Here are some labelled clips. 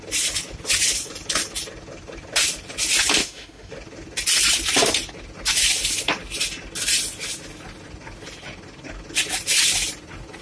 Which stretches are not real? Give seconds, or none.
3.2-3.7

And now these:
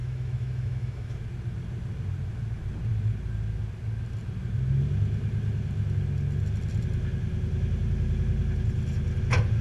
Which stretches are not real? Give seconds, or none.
0.0-1.2

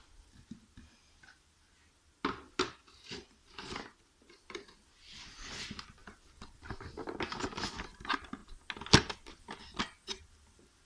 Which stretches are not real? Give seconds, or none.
none

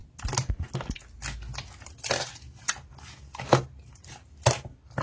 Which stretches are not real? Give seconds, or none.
none

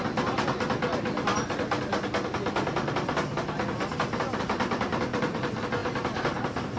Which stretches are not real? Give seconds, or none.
none

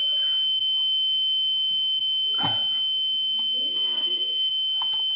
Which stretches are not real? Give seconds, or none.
3.7-4.5

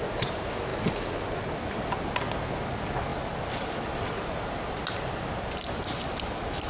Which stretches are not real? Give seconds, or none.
none

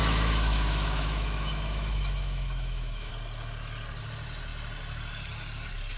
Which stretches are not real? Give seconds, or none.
0.0-3.1